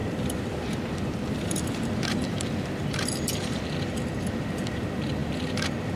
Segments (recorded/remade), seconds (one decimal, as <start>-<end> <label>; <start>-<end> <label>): 0.0-3.6 remade; 3.6-6.0 recorded